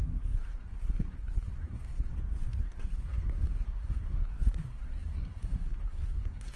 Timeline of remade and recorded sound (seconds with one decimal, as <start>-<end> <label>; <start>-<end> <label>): 0.0-2.1 remade; 2.1-2.6 recorded; 2.6-6.6 remade